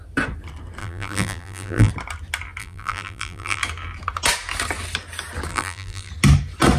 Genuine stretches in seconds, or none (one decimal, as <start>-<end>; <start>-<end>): 0.0-0.8; 1.9-2.6; 3.6-5.5; 6.1-6.8